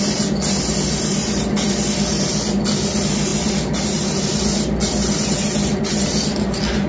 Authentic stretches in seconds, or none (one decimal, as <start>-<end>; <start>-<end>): 0.0-6.9